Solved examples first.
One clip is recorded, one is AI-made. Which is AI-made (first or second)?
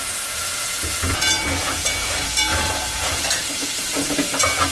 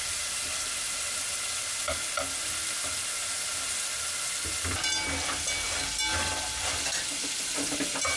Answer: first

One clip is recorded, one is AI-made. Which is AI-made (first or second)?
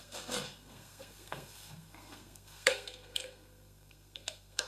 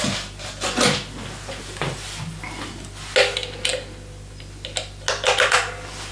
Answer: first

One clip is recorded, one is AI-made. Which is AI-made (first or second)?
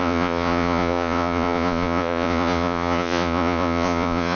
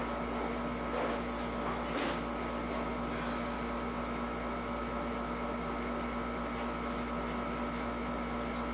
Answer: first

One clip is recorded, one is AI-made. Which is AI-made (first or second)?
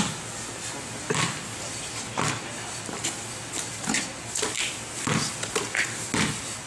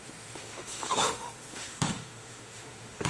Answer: second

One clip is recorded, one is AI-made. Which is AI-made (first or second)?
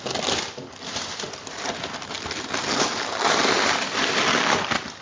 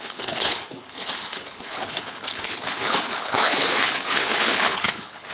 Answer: second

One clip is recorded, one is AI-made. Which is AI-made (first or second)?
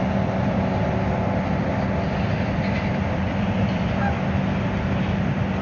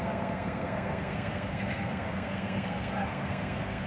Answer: second